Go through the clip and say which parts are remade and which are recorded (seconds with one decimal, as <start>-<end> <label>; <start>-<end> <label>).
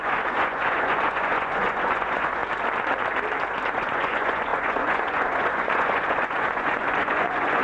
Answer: 0.0-2.4 remade; 2.4-3.7 recorded; 3.7-7.6 remade